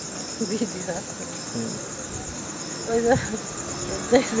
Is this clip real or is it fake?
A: real